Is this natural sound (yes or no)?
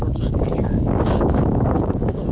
no